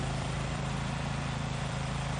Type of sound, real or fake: fake